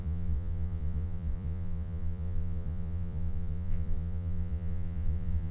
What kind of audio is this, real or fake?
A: fake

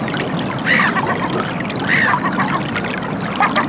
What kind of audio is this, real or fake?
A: real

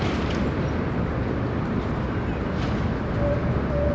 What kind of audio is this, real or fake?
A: real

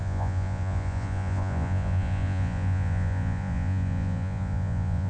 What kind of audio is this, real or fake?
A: fake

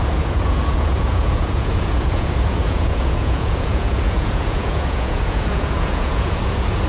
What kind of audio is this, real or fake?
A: fake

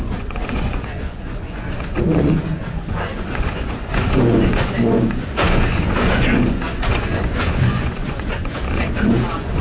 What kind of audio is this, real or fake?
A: fake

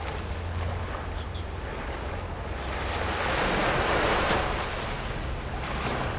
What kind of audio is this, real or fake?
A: real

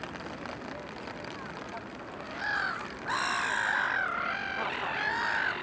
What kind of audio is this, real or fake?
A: real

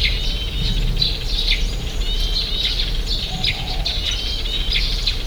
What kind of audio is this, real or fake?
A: real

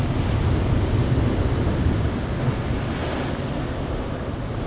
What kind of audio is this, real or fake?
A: real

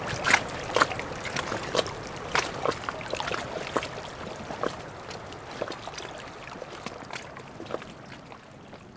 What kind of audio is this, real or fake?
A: real